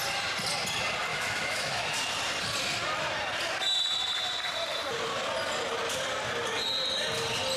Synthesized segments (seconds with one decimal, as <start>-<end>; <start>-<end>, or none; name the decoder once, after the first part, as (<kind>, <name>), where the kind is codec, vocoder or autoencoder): 1.1-1.9 (autoencoder, DAC-VAE)